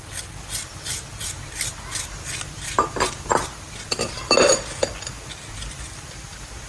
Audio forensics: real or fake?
real